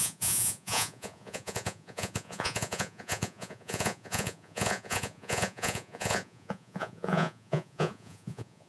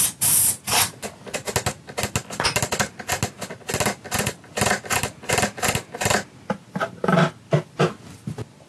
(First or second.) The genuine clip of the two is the second